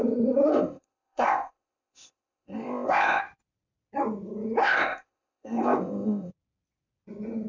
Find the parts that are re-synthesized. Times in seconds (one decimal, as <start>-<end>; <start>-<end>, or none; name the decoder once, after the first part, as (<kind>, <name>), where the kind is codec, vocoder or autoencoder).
0.5-3.2 (codec, ZipCodec); 4.6-6.3